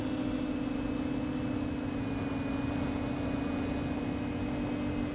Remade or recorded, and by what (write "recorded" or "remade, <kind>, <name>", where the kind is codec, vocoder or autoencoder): recorded